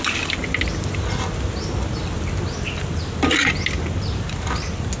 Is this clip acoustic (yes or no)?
yes